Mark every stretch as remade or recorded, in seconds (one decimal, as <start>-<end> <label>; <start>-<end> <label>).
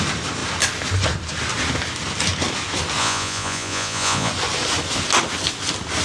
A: 0.0-3.0 recorded; 3.0-4.3 remade; 4.3-6.0 recorded